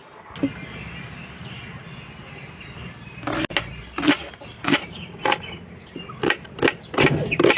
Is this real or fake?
real